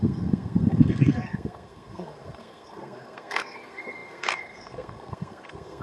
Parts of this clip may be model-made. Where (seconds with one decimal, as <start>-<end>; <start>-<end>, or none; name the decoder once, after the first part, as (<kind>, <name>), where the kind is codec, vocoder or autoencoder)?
0.0-5.8 (codec, SNAC)